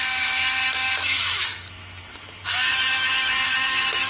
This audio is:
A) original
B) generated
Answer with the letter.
B